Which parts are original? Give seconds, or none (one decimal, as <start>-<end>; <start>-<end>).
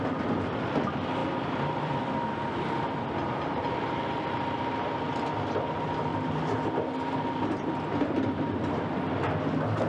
0.0-1.2; 3.0-9.9